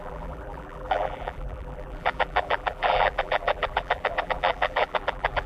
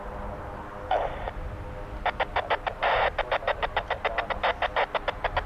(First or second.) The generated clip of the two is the first